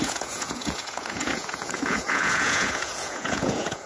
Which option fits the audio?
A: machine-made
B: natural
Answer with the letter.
A